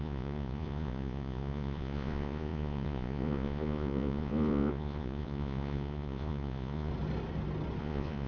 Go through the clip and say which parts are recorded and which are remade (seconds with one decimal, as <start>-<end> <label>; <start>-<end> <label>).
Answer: 0.0-6.9 remade; 6.9-7.8 recorded; 7.8-8.3 remade